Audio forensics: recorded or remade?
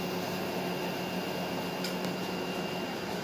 recorded